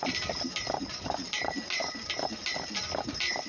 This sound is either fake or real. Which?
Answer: real